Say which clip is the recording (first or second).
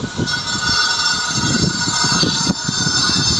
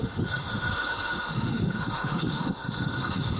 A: first